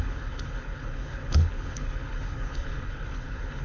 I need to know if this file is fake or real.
fake